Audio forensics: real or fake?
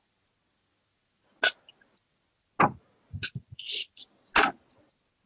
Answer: real